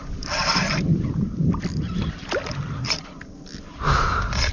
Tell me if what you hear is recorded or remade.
remade